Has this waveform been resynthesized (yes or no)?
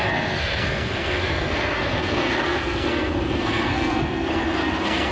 yes